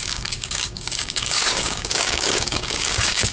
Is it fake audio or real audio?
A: fake